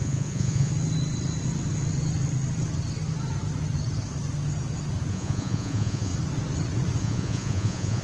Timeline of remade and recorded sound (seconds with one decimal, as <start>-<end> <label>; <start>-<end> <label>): 0.0-0.7 remade; 0.7-5.1 recorded; 5.1-6.1 remade; 6.1-7.0 recorded; 7.0-8.0 remade